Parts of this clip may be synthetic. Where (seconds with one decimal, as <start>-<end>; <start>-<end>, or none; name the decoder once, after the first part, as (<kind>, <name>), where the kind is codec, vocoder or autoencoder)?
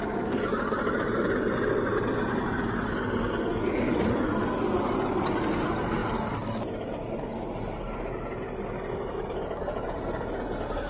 none